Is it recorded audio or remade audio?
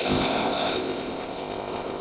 remade